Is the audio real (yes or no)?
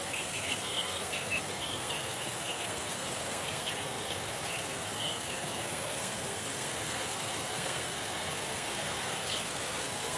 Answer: no